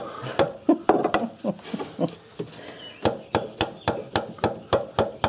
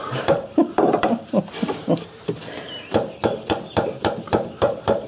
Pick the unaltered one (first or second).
first